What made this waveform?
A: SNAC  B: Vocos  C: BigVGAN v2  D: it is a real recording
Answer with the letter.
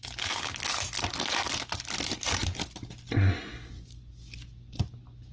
D